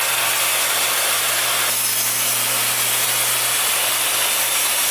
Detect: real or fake real